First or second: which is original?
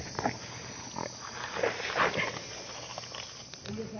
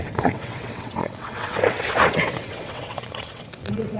first